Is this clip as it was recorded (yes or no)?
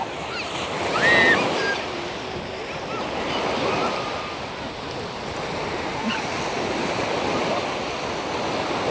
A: yes